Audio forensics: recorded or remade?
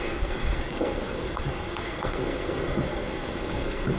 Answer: remade